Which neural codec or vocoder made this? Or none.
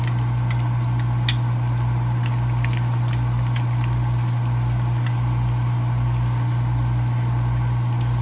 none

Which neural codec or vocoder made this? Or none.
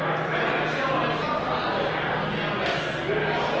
none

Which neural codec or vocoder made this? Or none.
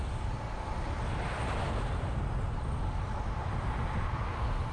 none